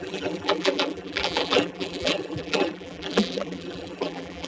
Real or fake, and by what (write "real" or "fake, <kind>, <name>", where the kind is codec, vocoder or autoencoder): fake, vocoder, BigVGAN v2